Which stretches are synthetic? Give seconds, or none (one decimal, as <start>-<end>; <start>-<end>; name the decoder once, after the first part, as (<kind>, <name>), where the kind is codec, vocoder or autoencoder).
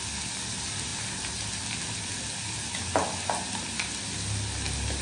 none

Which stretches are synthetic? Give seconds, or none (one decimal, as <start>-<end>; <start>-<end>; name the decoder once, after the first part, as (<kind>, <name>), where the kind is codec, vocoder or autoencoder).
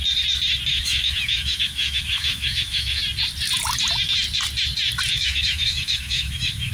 0.7-3.0 (autoencoder, DAC-VAE); 5.1-6.7